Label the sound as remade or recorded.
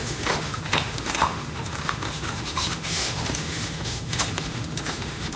remade